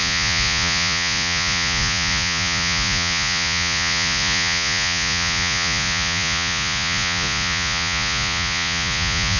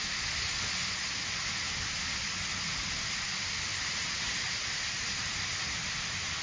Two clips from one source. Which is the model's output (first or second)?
first